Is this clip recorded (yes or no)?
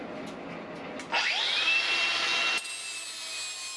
yes